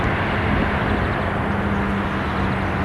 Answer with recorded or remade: recorded